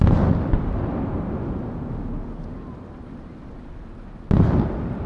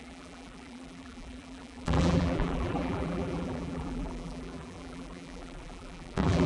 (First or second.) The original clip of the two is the first